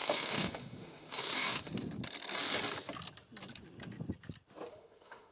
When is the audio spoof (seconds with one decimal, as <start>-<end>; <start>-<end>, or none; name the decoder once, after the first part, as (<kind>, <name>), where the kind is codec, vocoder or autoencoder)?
0.0-1.7 (autoencoder, DAC-VAE); 4.7-5.3